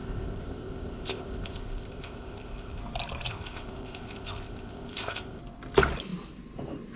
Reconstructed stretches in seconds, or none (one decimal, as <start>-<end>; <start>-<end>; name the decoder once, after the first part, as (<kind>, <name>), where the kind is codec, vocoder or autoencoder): 0.0-2.8 (codec, ZipCodec); 3.3-5.4